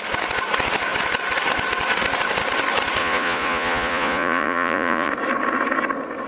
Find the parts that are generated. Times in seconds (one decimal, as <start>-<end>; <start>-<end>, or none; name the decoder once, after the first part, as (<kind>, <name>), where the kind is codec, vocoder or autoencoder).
3.0-5.1 (vocoder, Vocos)